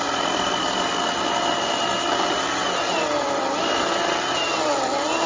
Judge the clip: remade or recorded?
recorded